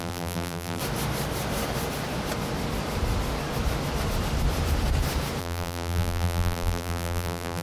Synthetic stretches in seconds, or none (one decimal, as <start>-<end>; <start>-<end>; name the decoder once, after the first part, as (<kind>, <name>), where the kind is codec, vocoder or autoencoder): 0.0-0.8 (vocoder, BigVGAN v2); 5.4-7.6